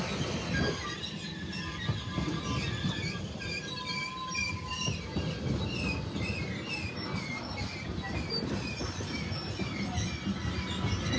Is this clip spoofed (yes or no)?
no